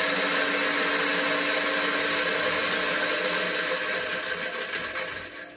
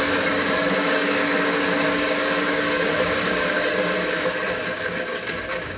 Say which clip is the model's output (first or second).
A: second